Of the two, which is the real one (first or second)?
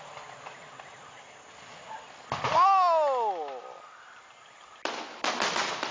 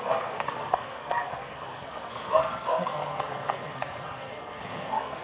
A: first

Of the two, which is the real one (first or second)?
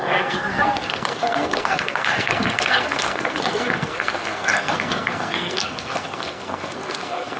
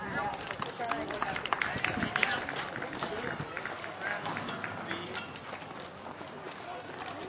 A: second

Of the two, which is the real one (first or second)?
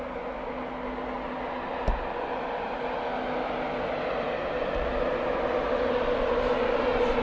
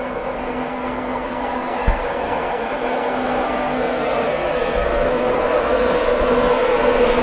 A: first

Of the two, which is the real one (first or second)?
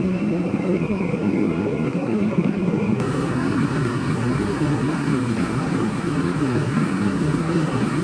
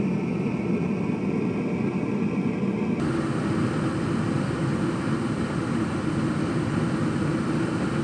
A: second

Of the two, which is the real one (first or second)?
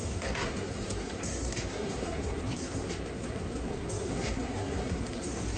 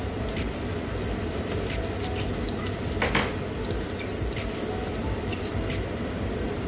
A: second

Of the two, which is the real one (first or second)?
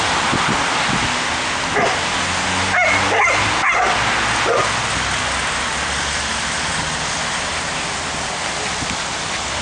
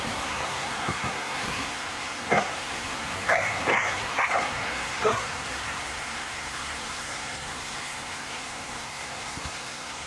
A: first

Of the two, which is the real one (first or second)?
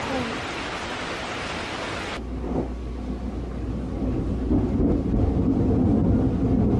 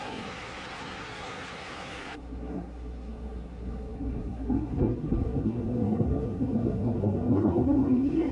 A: first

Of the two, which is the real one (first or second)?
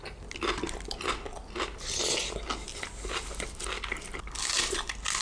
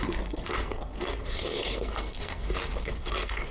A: first